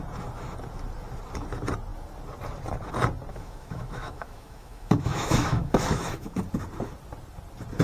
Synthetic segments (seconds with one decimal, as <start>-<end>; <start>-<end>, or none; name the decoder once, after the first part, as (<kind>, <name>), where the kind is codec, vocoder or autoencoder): 3.3-6.4 (autoencoder, DAC-VAE)